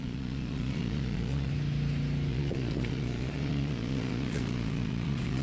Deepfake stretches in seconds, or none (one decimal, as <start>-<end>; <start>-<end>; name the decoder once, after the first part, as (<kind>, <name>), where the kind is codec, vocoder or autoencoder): 0.0-1.5 (vocoder, Vocos); 2.3-5.4